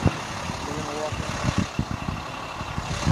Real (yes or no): yes